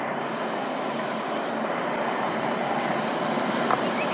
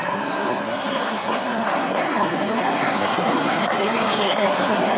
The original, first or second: first